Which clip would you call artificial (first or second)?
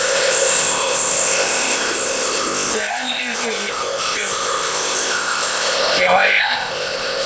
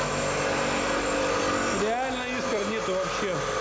first